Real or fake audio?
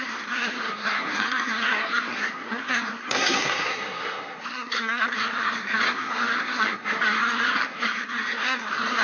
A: fake